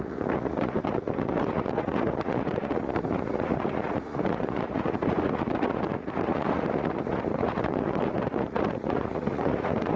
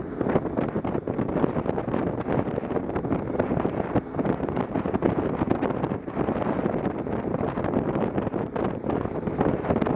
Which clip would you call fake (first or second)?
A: first